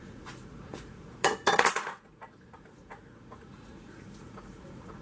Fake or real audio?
fake